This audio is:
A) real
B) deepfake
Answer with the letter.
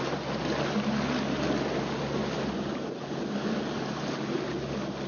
A